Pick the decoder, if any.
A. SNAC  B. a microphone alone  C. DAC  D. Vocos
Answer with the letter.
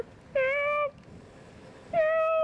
B